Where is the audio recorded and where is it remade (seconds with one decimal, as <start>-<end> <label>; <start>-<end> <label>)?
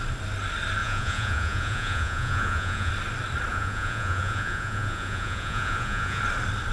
0.0-0.8 recorded; 0.8-2.9 remade; 2.9-3.5 recorded; 3.5-6.2 remade; 6.2-6.7 recorded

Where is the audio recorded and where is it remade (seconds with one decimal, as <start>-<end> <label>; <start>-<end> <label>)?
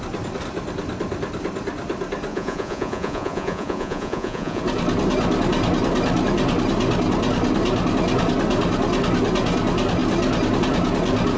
0.0-2.3 recorded; 2.3-4.6 remade; 4.6-11.4 recorded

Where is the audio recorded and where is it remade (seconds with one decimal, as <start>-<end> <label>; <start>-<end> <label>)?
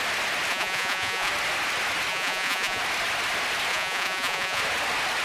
0.0-0.5 recorded; 0.5-1.3 remade; 1.3-2.1 recorded; 2.1-2.8 remade; 2.8-3.7 recorded; 3.7-4.6 remade; 4.6-5.2 recorded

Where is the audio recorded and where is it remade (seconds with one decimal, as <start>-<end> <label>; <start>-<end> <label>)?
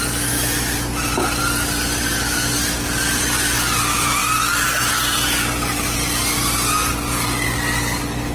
0.0-8.3 recorded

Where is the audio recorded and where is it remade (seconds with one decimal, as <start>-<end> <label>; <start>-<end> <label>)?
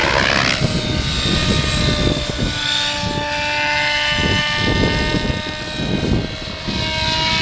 0.0-7.4 recorded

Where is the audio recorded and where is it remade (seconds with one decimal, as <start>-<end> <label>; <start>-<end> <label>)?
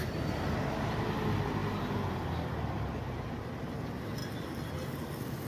0.0-5.5 recorded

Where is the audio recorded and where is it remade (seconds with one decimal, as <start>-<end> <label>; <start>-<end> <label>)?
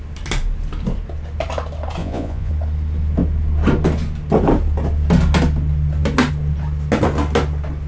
0.0-2.0 recorded; 2.0-2.5 remade; 2.5-7.9 recorded